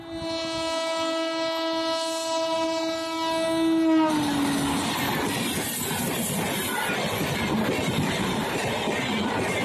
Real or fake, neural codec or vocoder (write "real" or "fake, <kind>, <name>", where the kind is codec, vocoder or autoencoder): real